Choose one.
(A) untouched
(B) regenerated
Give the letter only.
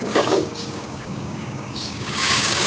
B